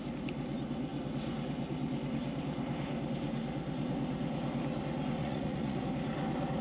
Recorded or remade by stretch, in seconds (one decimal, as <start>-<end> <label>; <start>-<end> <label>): 0.0-5.2 recorded; 5.2-5.8 remade; 5.8-6.6 recorded